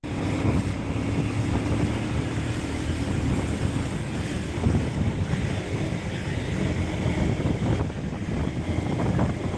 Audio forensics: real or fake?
real